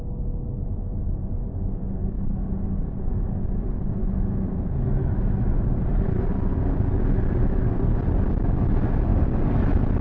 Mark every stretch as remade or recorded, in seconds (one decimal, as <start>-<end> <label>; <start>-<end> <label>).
0.0-4.0 recorded; 4.0-4.7 remade; 4.7-10.0 recorded